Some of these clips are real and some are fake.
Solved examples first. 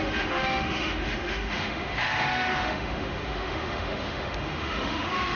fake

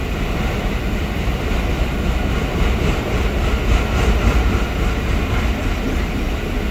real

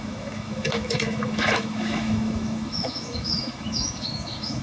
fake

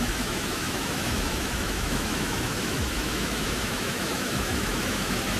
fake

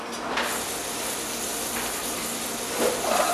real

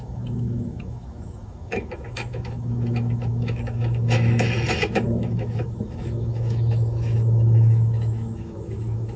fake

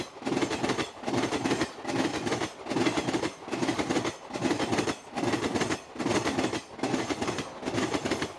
real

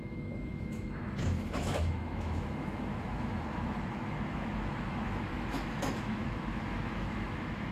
fake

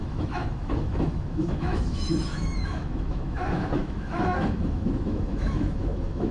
fake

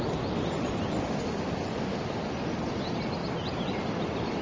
real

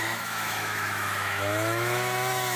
fake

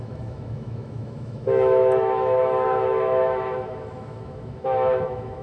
fake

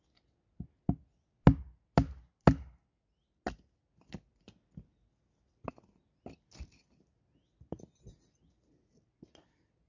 real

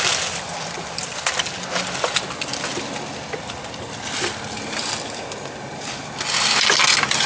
real